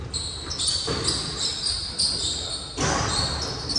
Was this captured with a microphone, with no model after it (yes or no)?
yes